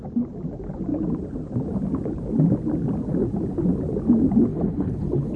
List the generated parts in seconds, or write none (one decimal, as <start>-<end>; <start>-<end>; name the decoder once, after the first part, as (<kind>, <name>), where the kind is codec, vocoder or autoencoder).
4.5-5.4 (codec, HILCodec)